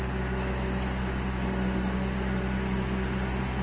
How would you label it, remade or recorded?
recorded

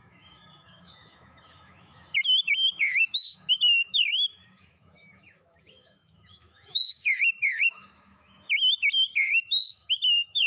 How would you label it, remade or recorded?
remade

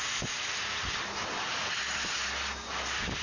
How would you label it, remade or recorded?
recorded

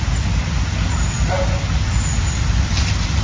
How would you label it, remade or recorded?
recorded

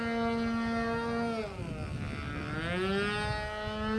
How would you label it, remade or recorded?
recorded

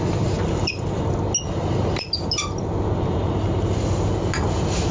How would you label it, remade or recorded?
recorded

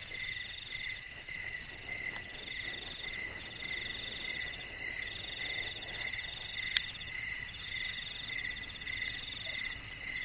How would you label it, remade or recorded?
recorded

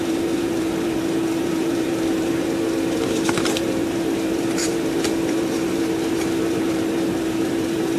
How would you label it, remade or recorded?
remade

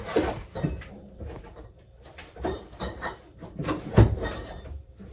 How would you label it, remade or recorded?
remade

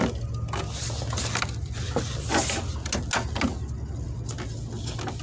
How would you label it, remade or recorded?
recorded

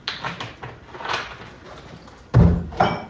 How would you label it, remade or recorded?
recorded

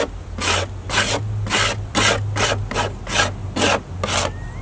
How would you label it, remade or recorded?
recorded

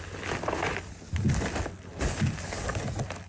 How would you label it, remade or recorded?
recorded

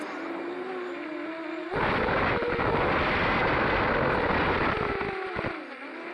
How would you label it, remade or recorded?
recorded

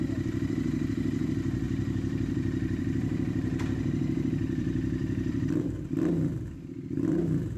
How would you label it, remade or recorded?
remade